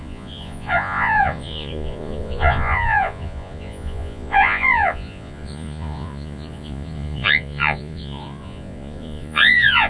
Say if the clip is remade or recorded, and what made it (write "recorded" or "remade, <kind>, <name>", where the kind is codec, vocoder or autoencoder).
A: remade, vocoder, Vocos